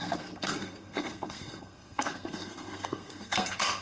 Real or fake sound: fake